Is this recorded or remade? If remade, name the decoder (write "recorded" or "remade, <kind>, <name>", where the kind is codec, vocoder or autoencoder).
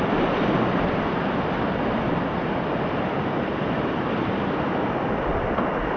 recorded